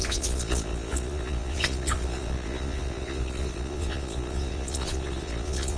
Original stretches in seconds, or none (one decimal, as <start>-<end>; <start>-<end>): none